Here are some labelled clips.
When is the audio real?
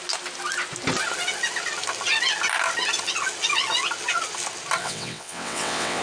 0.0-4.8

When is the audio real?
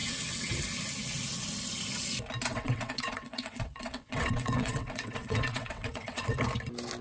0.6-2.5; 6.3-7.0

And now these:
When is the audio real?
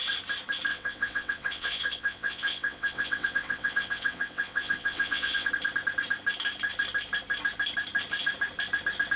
0.0-0.7; 5.5-9.2